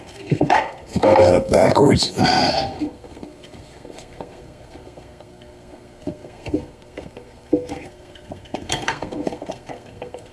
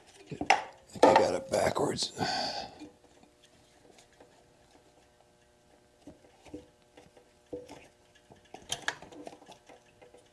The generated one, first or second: first